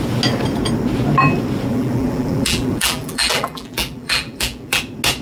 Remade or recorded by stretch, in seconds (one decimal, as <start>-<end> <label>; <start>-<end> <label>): 0.0-1.7 recorded; 1.7-4.8 remade; 4.8-5.2 recorded